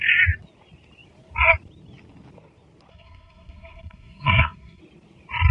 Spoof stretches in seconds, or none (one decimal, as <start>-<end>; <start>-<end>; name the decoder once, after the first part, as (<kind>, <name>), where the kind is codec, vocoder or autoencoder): 2.9-4.8 (codec, SNAC)